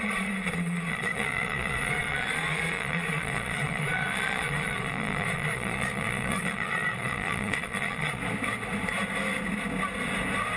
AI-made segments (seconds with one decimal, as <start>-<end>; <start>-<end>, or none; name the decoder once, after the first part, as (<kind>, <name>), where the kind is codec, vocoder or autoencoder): 0.0-8.2 (vocoder, Vocos)